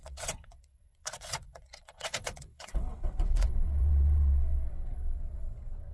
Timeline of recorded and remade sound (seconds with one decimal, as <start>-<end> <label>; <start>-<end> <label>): 0.0-5.9 remade